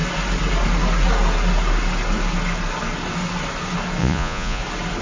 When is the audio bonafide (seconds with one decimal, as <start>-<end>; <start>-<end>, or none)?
0.0-4.0; 4.6-5.0